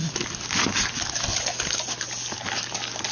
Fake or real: real